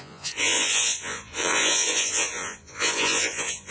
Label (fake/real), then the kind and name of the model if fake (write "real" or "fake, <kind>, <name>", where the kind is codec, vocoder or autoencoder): fake, vocoder, Vocos